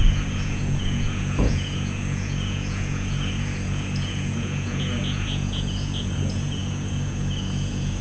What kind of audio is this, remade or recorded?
remade